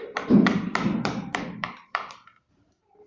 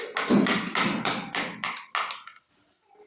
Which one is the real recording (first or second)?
second